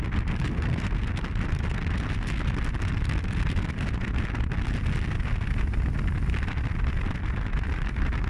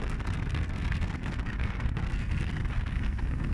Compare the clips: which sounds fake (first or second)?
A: second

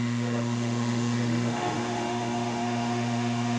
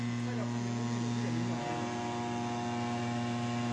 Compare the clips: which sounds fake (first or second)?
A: first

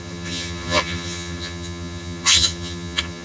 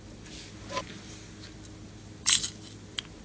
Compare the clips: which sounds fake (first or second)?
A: first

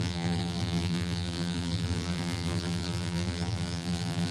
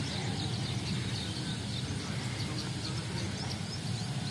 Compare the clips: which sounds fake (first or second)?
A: first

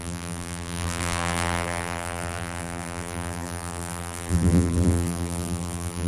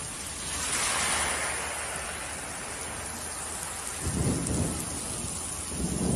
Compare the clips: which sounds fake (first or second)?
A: first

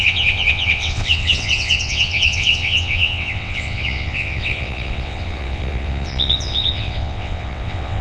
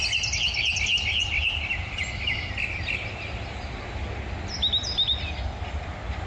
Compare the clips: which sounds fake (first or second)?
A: first